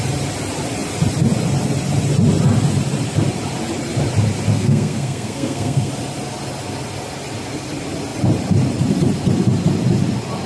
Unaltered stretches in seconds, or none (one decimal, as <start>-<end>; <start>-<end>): 0.0-4.5; 5.9-10.5